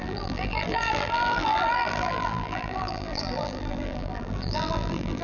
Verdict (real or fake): fake